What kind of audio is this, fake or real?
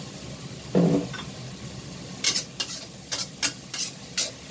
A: real